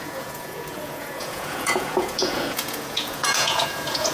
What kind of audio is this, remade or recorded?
remade